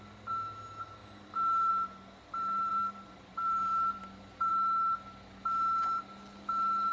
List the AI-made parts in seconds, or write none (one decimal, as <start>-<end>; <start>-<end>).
2.7-4.0